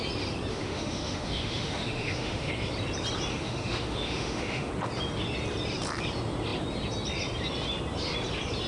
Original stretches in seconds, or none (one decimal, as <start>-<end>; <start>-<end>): 0.0-0.5; 2.5-3.3; 4.7-8.7